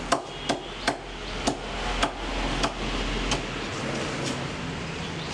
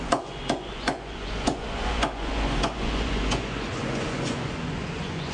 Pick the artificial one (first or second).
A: second